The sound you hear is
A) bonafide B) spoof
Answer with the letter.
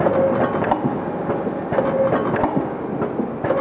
A